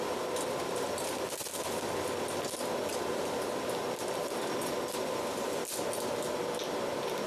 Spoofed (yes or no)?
no